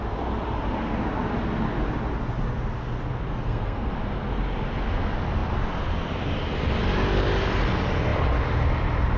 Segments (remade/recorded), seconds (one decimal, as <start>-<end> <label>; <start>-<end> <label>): 0.0-3.3 recorded; 3.3-3.9 remade; 3.9-9.2 recorded